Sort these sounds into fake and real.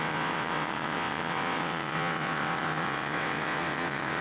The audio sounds fake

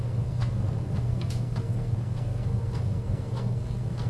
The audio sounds fake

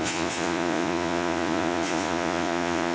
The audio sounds fake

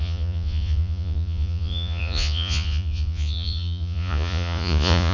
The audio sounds fake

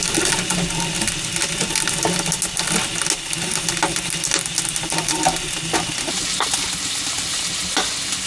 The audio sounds real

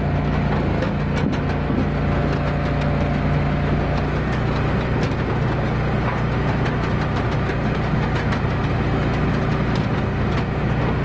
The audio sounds real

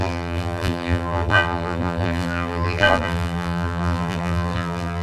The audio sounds fake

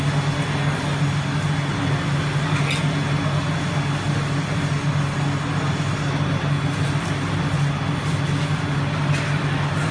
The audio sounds real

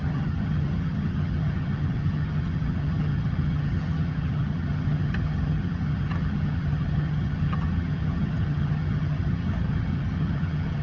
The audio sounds fake